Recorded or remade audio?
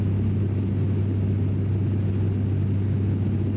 recorded